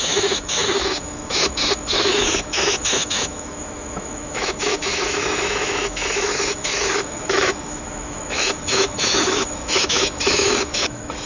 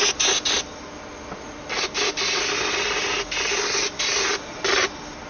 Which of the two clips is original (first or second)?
second